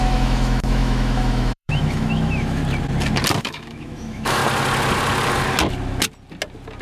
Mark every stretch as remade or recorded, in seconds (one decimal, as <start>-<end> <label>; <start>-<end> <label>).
0.0-2.6 remade; 2.6-3.4 recorded; 3.4-4.4 remade; 4.4-6.8 recorded